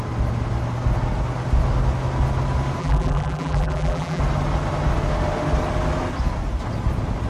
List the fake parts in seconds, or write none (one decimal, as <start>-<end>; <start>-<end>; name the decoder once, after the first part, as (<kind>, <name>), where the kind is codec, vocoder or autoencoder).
2.8-4.2 (vocoder, BigVGAN v2)